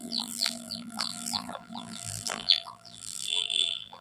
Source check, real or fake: fake